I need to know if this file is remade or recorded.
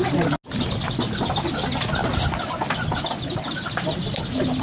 recorded